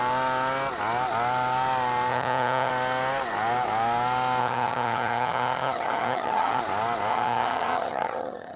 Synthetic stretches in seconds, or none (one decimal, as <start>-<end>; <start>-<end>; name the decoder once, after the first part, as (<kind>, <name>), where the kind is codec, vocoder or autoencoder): 2.1-2.7 (vocoder, HiFi-GAN); 4.4-6.6; 7.1-8.6